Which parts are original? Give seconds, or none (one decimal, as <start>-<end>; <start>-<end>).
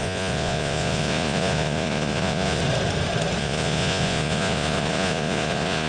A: 2.6-3.4